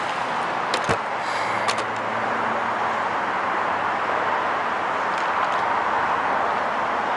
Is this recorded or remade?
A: recorded